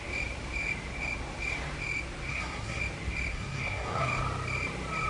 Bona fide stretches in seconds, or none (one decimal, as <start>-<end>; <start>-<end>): 0.0-2.3; 2.8-3.3; 4.1-5.1